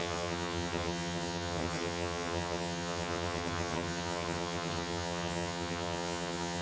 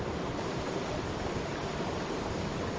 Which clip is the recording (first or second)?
second